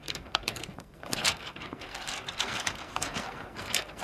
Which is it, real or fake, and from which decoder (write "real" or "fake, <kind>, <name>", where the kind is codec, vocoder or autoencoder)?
fake, codec, SNAC